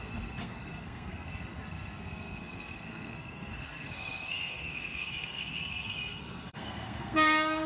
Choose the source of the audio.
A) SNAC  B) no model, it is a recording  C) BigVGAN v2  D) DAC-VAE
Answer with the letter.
A